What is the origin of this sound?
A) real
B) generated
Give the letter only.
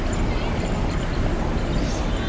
A